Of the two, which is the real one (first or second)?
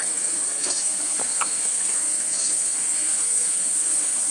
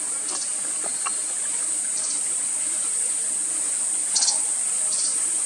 second